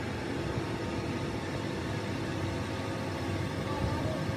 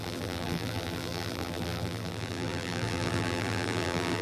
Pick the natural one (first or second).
first